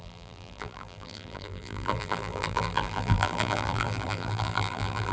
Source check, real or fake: fake